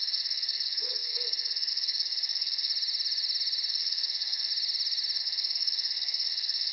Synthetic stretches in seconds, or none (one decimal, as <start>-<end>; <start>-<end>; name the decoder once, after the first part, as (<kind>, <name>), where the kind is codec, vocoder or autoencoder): 0.0-2.7 (codec, SNAC); 3.7-4.5; 5.2-6.7